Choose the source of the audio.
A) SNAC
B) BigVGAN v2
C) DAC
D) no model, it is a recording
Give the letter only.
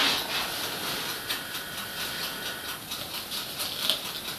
D